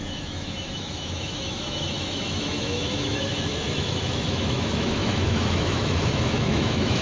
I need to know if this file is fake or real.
fake